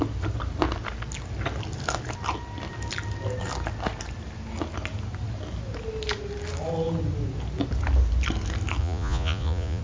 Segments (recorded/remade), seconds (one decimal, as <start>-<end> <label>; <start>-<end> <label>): 0.0-8.8 recorded; 8.8-9.8 remade